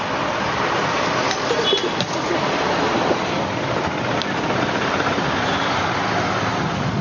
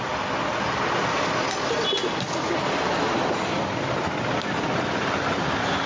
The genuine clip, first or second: second